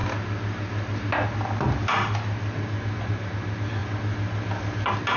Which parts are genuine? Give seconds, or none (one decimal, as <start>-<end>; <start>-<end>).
0.0-5.2